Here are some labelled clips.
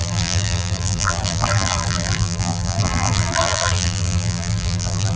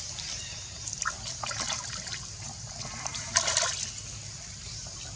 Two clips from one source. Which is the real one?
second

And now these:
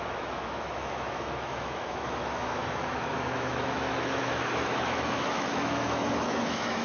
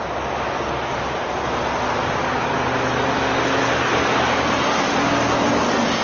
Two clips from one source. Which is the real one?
second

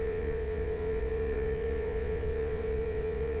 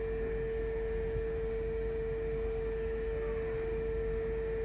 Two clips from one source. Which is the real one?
second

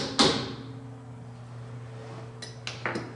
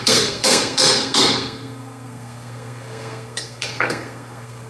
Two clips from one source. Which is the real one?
first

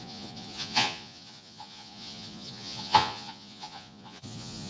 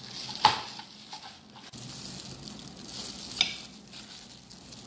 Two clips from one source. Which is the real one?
second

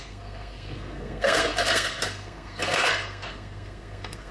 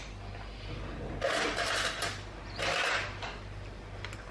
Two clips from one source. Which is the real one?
second